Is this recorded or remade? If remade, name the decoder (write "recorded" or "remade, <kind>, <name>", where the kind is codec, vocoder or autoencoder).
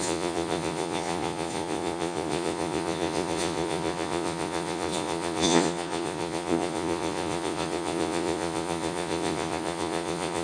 remade, vocoder, Vocos